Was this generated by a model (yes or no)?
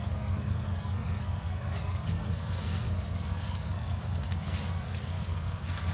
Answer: yes